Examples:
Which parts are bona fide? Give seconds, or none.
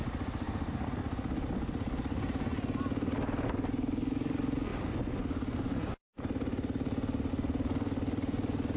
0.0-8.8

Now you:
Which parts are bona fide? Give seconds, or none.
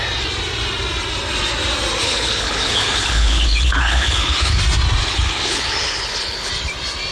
0.0-2.0; 4.6-5.0; 6.5-7.1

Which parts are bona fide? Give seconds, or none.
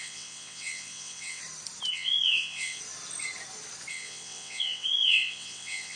1.4-1.9; 2.8-3.9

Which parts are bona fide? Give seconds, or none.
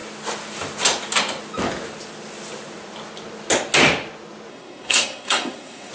0.0-4.5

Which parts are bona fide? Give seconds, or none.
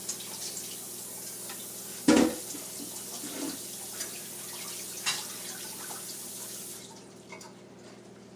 0.0-8.4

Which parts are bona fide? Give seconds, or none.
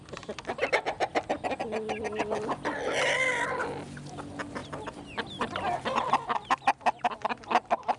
0.0-8.0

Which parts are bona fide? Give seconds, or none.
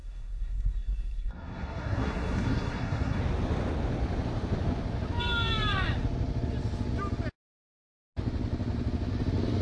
3.2-9.6